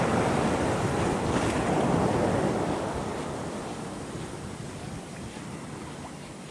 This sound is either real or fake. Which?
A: real